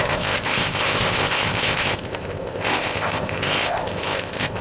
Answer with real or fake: fake